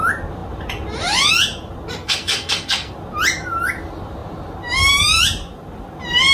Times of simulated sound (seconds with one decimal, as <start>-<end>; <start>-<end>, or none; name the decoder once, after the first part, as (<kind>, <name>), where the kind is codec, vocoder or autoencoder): 2.0-2.9 (codec, SNAC)